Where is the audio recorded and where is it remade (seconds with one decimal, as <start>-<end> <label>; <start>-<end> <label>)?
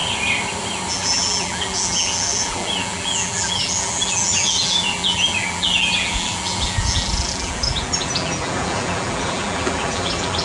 0.0-0.9 recorded; 0.9-10.4 remade